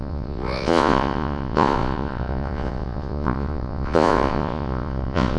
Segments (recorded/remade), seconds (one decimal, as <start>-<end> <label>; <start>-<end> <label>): 0.0-5.4 remade